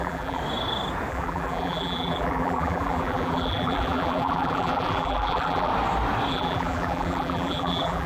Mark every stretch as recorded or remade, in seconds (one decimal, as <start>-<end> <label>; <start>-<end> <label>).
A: 0.0-0.4 remade; 0.4-1.1 recorded; 1.1-5.7 remade; 5.7-6.3 recorded; 6.3-8.1 remade